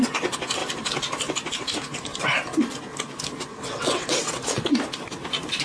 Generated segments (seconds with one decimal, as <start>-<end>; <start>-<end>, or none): 3.5-4.7